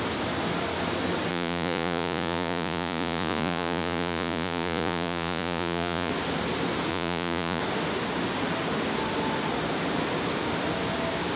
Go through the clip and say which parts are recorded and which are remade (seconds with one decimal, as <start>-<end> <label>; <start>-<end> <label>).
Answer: 0.0-1.3 recorded; 1.3-6.1 remade; 6.1-6.9 recorded; 6.9-7.6 remade; 7.6-11.4 recorded